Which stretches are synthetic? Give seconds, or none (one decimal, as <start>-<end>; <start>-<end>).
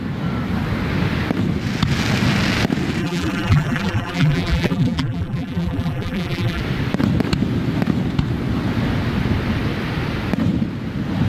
3.0-6.6